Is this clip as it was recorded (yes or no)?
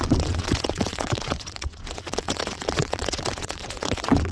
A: no